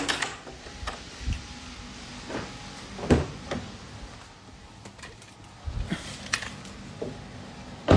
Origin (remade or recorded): recorded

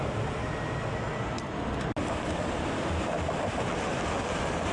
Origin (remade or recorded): recorded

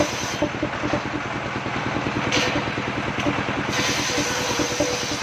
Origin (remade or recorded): recorded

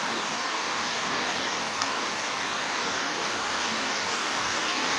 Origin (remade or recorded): remade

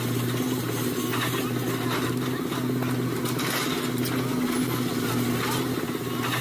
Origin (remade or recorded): recorded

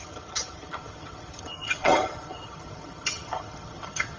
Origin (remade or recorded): remade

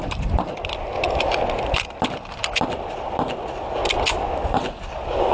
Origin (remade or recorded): recorded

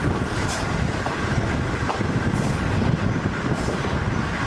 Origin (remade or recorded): recorded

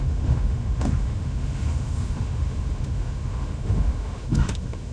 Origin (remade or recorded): remade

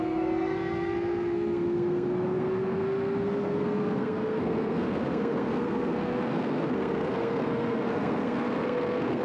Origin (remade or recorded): remade